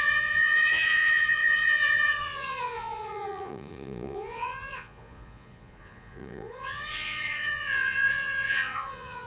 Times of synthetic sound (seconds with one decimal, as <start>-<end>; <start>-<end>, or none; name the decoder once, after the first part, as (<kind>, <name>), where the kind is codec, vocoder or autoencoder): 0.0-9.3 (vocoder, Vocos)